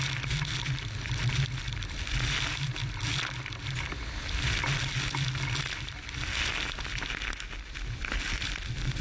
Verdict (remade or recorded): recorded